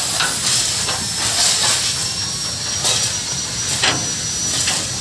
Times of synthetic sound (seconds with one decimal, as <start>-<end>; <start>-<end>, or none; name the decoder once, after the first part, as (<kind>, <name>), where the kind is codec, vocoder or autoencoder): none